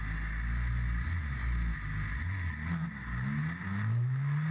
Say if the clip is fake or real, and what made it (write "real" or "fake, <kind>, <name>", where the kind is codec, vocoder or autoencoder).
real